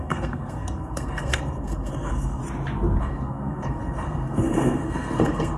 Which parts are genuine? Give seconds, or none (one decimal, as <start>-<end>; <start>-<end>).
2.4-3.0